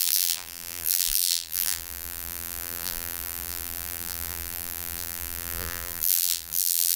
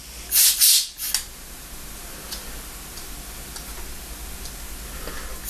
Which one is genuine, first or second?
second